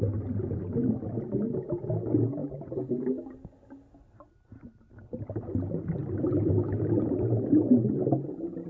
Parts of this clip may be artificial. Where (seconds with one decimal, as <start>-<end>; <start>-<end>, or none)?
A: none